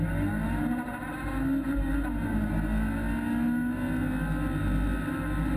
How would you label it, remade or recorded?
recorded